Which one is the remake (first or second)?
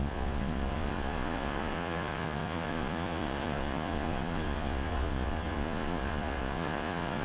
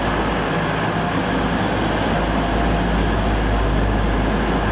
first